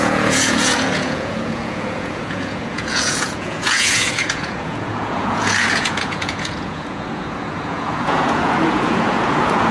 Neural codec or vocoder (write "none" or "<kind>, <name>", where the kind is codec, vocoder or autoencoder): vocoder, Vocos